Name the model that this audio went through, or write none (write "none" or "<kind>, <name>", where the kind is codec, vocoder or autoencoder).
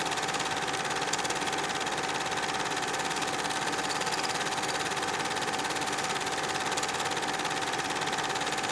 vocoder, BigVGAN v2